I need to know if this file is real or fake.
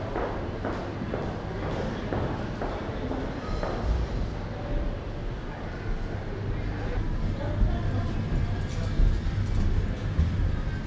real